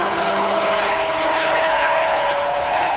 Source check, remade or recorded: remade